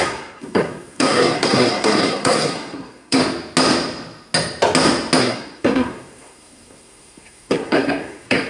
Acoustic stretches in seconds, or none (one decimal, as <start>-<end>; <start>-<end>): 3.2-5.2